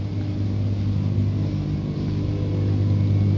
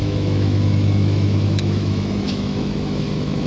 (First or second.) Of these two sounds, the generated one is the second